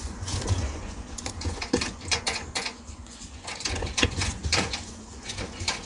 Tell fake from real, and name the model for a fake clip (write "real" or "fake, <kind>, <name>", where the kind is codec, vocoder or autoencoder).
fake, vocoder, Vocos